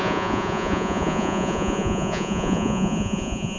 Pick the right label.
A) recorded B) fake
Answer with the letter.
B